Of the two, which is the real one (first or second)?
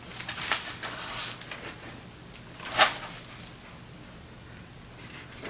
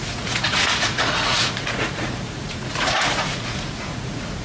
first